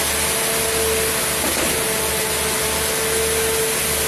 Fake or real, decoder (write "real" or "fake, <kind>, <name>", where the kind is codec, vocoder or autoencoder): real